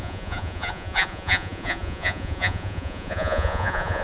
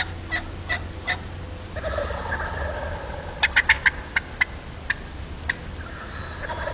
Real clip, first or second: second